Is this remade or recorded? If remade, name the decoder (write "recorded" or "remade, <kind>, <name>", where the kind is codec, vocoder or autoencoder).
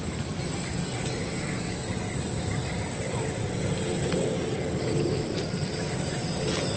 recorded